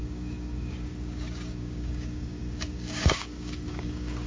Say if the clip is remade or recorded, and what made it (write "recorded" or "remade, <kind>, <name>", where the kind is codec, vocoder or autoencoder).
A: remade, codec, DAC